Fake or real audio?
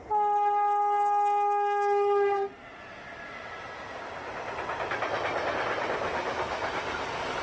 real